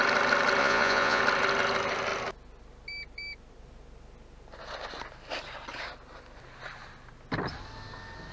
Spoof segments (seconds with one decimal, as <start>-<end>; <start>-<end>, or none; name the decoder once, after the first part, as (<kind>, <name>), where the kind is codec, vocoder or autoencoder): 0.6-1.2 (vocoder, Vocos)